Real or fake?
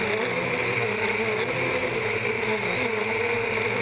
real